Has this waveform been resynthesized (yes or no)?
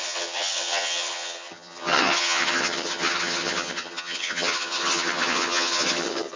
yes